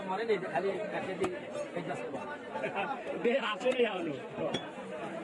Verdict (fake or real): real